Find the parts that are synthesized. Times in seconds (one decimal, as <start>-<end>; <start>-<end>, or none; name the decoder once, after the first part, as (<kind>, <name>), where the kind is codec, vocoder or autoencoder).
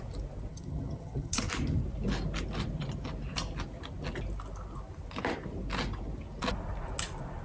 0.5-1.4 (vocoder, HiFi-GAN)